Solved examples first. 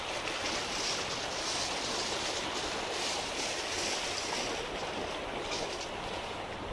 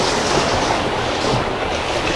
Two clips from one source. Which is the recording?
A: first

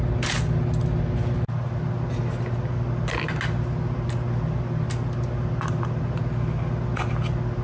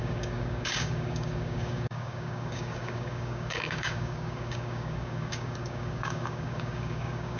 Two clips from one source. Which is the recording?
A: first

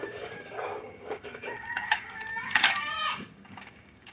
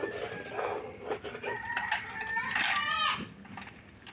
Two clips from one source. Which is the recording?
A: second